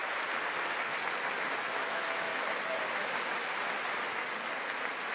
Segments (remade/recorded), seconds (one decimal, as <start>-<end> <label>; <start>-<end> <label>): 0.0-1.6 recorded; 1.6-2.3 remade; 2.3-5.1 recorded

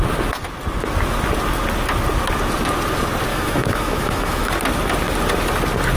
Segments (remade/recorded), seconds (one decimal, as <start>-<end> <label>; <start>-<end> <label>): 0.0-3.3 recorded; 3.3-4.5 remade; 4.5-6.0 recorded